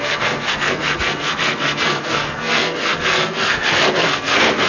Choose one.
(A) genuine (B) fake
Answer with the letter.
B